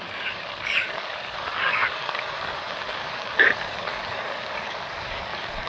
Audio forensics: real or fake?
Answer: fake